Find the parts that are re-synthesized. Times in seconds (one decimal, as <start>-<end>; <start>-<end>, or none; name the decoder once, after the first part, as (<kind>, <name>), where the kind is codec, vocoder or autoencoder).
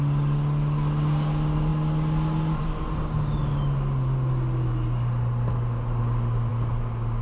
none